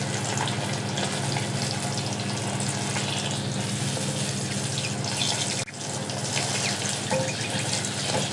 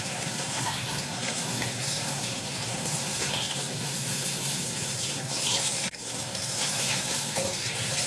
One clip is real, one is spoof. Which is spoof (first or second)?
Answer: second